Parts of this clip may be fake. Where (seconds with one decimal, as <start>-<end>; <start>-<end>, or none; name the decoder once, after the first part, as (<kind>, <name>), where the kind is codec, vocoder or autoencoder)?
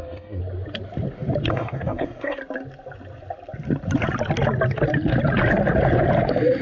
0.0-0.4 (codec, SNAC); 1.5-2.4